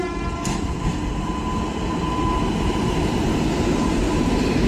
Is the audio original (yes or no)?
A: yes